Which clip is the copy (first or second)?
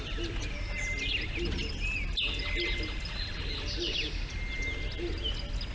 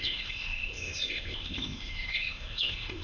second